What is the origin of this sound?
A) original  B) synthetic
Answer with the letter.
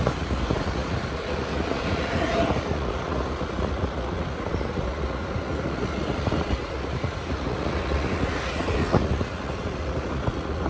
B